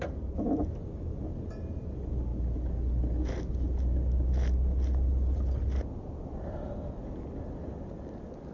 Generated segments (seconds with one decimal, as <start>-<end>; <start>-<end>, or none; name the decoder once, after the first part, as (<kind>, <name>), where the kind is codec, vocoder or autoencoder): none